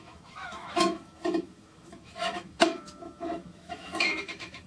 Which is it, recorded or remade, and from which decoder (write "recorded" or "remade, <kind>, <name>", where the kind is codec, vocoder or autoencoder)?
remade, autoencoder, DAC-VAE